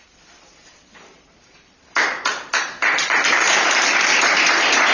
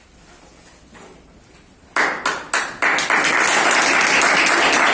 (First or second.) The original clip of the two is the second